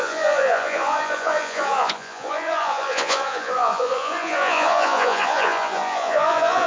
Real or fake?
fake